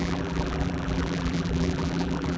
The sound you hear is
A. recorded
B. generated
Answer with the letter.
B